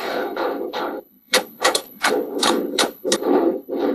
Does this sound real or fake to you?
fake